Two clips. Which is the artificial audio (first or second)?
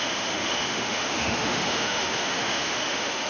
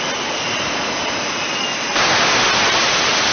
first